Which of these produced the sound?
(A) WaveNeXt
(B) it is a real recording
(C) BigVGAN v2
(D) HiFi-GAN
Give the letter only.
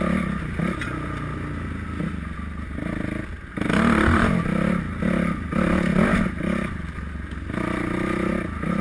B